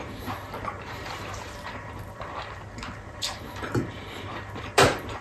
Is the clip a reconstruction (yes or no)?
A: yes